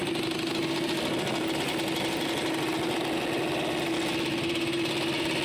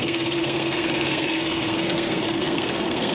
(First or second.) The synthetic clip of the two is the second